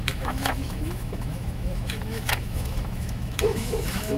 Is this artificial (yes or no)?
yes